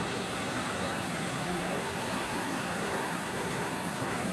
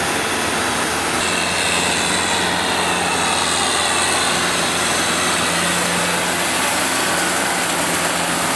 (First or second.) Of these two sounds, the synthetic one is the first